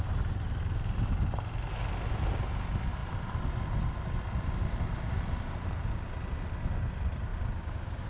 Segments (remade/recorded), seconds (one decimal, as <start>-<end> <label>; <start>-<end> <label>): 0.0-8.1 recorded